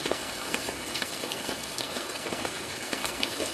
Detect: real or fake fake